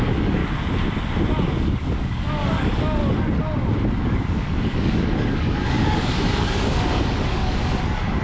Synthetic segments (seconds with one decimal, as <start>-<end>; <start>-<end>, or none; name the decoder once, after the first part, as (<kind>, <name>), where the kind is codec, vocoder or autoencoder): 0.0-0.4 (codec, DAC); 1.5-3.0; 4.0-8.2